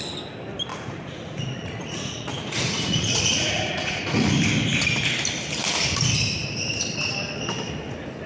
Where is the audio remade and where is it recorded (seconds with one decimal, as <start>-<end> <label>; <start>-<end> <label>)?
0.0-0.7 recorded; 0.7-4.3 remade; 4.3-8.3 recorded